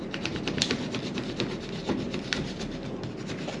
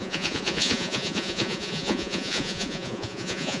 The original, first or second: first